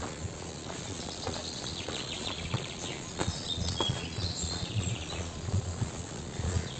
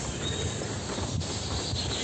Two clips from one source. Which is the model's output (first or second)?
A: first